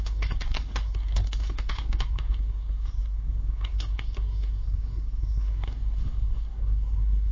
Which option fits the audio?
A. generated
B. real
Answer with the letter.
A